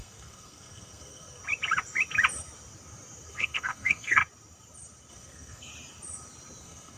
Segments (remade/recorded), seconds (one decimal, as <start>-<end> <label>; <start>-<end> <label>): 0.0-1.4 remade; 1.4-3.3 recorded; 3.3-4.2 remade; 4.2-5.1 recorded; 5.1-5.7 remade; 5.7-6.6 recorded; 6.6-7.0 remade